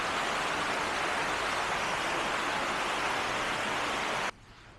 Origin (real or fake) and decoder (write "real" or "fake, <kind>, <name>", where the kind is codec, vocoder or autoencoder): real